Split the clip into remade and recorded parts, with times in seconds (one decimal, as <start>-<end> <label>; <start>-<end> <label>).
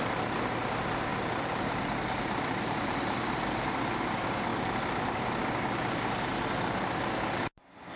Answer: 0.0-1.1 recorded; 1.1-3.5 remade; 3.5-4.5 recorded; 4.5-5.6 remade; 5.6-8.0 recorded